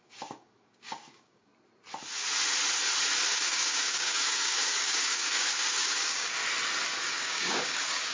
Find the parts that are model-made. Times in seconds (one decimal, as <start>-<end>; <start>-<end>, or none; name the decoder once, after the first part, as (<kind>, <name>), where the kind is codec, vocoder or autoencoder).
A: 0.0-1.5 (codec, DAC); 3.4-6.4; 7.0-8.1

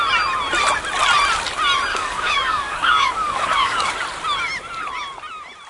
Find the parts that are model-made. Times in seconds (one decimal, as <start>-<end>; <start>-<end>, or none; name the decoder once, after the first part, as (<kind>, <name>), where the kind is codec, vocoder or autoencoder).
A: 1.9-3.9 (codec, DAC)

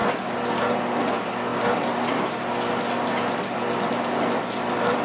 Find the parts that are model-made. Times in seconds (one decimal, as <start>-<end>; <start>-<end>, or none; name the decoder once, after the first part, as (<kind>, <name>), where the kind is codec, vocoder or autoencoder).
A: none

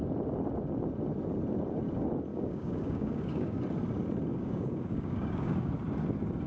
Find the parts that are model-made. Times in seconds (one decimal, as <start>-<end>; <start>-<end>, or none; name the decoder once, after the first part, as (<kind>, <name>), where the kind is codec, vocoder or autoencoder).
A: 2.3-3.6 (codec, DAC); 4.3-5.7

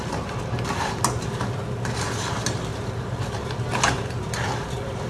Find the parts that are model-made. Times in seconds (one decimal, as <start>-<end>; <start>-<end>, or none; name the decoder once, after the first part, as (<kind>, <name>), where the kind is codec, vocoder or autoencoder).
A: none

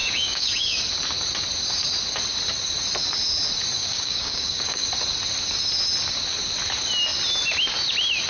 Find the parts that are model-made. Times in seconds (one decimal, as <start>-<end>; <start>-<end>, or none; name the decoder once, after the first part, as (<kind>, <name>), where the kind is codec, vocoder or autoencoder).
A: 0.0-0.8 (codec, DAC); 3.8-4.9

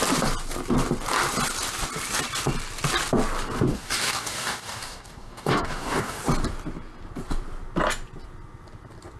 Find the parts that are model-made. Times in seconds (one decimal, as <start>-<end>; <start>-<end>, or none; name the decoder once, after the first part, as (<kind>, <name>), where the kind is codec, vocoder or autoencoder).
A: 3.7-6.2 (codec, DAC)